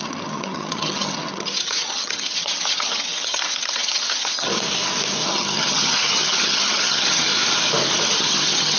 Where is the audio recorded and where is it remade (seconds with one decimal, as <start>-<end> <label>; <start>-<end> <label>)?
0.0-4.5 remade; 4.5-5.3 recorded; 5.3-7.3 remade; 7.3-8.1 recorded; 8.1-8.8 remade